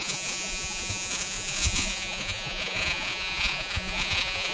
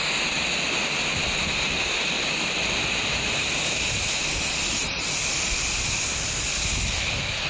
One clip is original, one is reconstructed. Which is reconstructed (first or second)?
first